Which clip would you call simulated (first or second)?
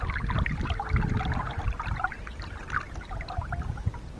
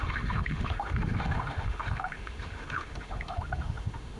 second